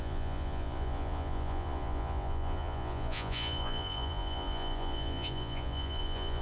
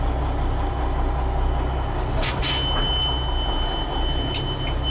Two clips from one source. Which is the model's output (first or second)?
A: first